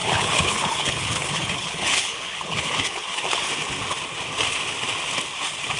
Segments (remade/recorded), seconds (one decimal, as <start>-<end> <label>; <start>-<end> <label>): 0.0-3.5 remade; 3.5-5.8 recorded